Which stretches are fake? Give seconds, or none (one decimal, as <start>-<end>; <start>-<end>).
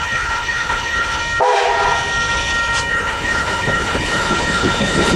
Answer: 0.0-1.2; 2.9-5.2